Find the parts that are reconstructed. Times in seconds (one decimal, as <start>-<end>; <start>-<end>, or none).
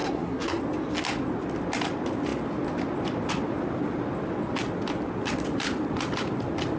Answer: 0.0-0.6